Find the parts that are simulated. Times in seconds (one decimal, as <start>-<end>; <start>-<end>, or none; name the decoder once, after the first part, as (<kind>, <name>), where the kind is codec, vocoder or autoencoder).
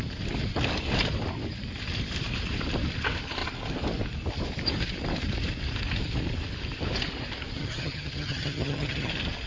7.6-9.1 (vocoder, HiFi-GAN)